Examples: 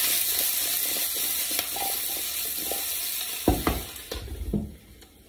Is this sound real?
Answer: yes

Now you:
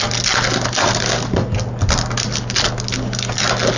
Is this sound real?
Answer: yes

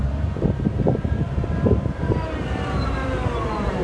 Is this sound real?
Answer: no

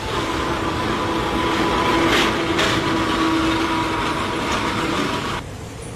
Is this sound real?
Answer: yes